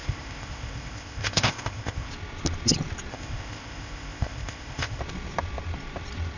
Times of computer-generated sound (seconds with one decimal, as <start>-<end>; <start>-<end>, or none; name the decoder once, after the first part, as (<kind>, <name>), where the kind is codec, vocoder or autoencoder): 0.0-2.1 (codec, ZipCodec); 3.1-5.0